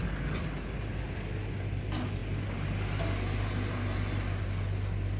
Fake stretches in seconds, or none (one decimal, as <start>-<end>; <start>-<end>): none

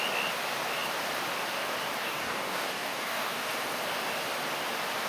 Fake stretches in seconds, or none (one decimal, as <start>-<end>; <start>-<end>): 2.0-3.5

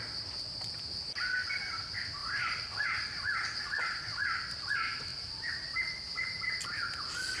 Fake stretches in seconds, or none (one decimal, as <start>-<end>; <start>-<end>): 2.2-4.0; 5.1-7.4

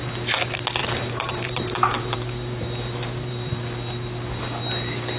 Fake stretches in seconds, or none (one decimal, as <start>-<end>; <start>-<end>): 0.8-3.5